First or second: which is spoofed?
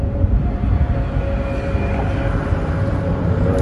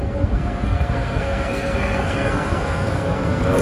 second